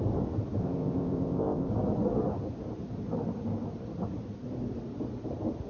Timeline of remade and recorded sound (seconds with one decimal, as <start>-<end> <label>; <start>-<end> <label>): 0.0-0.6 recorded; 0.6-1.7 remade; 1.7-5.7 recorded